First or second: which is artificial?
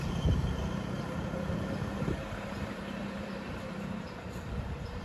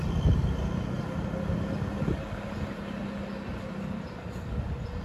first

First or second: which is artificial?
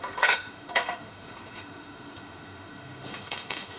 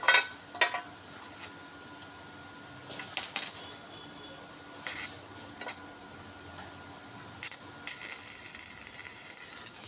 first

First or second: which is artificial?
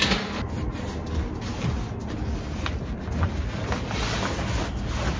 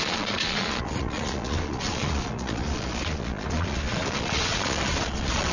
second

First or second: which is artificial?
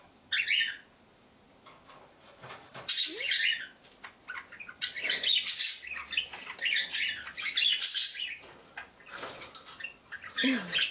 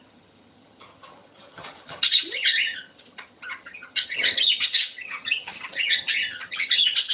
second